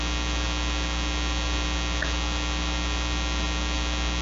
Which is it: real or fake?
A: real